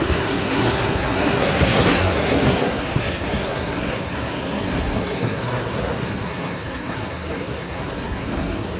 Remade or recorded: remade